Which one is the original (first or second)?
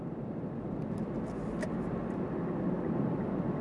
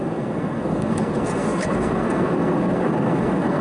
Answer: first